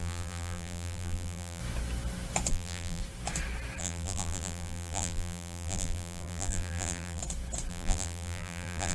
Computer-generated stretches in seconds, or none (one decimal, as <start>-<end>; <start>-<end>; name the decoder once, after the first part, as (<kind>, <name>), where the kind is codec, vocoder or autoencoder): 0.0-1.6 (vocoder, BigVGAN v2); 2.5-3.0; 3.8-7.2; 7.7-8.9